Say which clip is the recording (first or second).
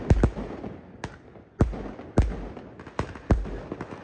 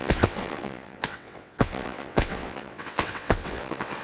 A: first